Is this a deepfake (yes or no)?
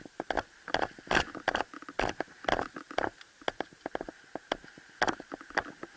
no